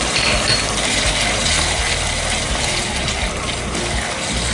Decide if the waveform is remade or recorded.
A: remade